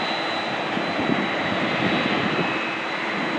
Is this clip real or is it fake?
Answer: real